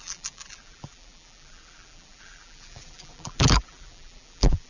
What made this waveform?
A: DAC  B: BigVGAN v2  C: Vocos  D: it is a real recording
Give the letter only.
B